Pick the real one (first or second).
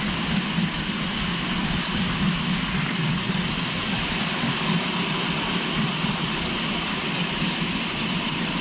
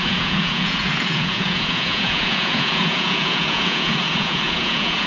first